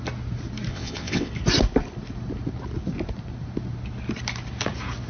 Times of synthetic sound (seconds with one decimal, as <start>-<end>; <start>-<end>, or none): 0.7-1.3